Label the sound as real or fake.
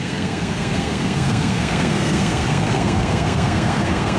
fake